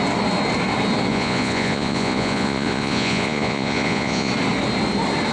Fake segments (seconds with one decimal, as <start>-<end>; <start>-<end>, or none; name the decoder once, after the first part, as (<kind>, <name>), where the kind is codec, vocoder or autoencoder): 1.1-4.3 (vocoder, Vocos)